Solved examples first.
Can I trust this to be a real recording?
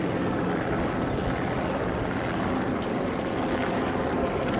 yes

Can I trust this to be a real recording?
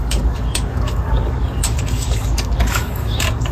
no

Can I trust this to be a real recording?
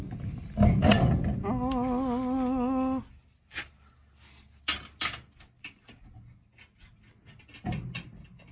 yes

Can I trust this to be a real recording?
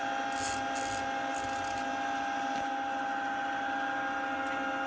yes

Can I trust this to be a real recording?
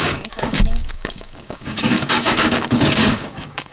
no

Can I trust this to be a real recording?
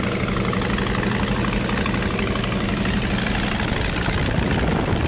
yes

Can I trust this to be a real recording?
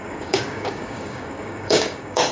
no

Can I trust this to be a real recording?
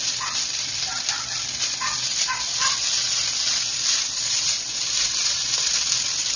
yes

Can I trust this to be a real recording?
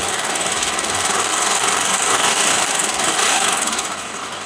no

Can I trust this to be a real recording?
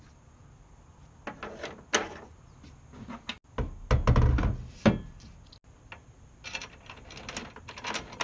yes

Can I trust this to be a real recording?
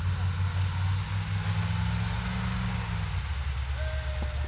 yes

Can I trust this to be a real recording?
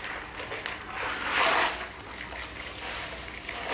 yes